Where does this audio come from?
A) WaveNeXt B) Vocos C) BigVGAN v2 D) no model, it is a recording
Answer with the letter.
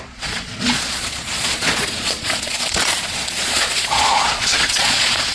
B